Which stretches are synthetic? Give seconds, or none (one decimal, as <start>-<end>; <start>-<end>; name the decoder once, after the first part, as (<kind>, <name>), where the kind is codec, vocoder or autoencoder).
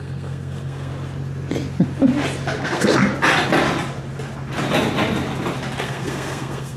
0.0-0.9 (codec, SNAC); 2.6-3.1; 5.8-6.8